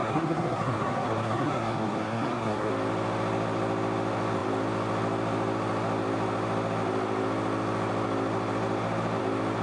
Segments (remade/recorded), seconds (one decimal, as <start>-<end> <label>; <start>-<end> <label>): 0.0-2.7 remade; 2.7-9.6 recorded